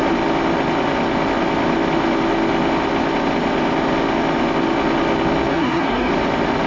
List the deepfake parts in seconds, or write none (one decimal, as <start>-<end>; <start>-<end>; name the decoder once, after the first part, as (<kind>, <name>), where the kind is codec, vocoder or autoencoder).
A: 5.5-6.1 (codec, SNAC)